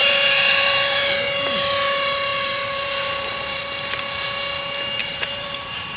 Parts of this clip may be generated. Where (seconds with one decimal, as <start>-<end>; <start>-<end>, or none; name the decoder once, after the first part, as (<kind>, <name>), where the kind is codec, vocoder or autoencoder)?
0.0-1.0 (vocoder, BigVGAN v2); 2.3-3.6; 5.0-6.0